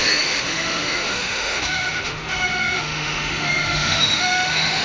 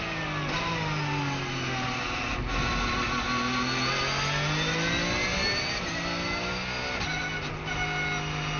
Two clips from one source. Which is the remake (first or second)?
first